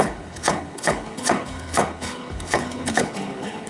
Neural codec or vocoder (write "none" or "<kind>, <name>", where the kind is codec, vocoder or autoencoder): codec, HILCodec